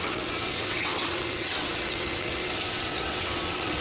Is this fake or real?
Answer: fake